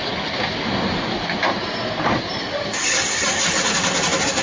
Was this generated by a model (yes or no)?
no